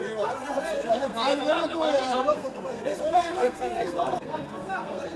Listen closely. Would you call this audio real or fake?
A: fake